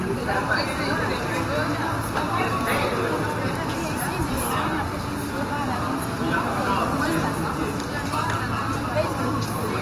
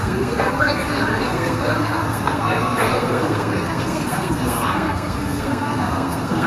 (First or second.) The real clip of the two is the first